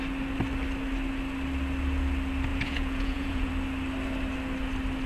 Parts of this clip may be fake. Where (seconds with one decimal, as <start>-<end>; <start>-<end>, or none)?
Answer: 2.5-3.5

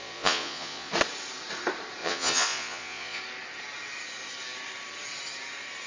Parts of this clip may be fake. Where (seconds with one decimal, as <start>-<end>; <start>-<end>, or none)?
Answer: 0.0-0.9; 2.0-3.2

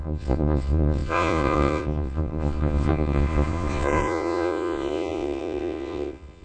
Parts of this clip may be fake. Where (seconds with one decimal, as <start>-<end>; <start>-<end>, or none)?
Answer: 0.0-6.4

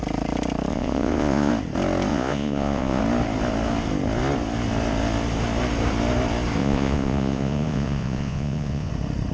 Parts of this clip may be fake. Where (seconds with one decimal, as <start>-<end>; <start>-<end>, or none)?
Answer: 0.7-1.5; 2.1-3.0; 6.6-8.9